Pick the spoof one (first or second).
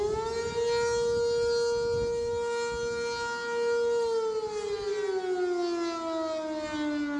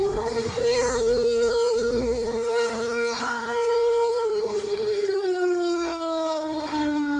second